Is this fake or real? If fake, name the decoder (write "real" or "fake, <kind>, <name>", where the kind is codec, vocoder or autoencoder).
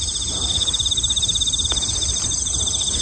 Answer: real